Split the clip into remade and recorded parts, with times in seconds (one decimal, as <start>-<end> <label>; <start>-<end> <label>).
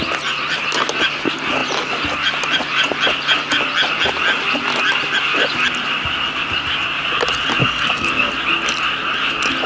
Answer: 0.0-7.6 recorded; 7.6-8.3 remade; 8.3-9.7 recorded